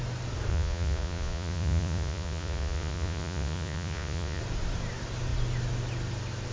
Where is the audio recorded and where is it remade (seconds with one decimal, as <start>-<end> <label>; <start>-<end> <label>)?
0.0-0.5 recorded; 0.5-4.4 remade; 4.4-6.5 recorded